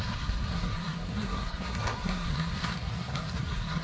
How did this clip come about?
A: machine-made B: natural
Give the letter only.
A